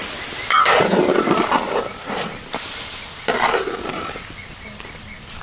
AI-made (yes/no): yes